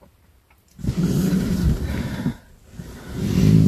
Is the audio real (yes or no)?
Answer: yes